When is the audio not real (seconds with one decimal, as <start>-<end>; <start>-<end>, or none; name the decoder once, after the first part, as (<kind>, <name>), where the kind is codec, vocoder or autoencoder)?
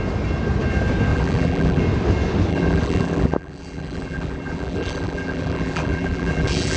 1.1-1.8 (vocoder, BigVGAN v2); 2.5-6.8